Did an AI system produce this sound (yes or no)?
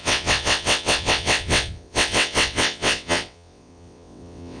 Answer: yes